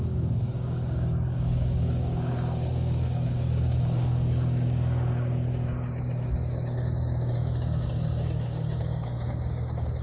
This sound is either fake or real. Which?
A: fake